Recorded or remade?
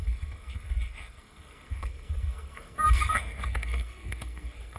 remade